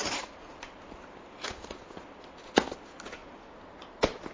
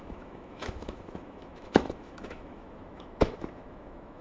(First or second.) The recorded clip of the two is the first